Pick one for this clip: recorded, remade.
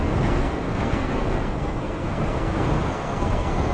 remade